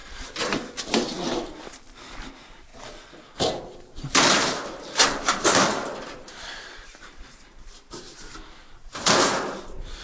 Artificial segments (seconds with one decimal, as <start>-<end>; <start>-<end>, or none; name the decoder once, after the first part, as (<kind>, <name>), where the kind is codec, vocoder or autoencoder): 0.0-10.0 (vocoder, BigVGAN v2)